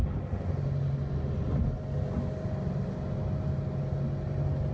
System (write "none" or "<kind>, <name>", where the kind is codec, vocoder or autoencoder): none